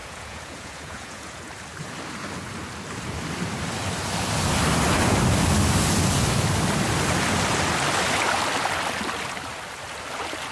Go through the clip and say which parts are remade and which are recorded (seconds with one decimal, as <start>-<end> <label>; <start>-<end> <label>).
0.0-1.5 remade; 1.5-10.5 recorded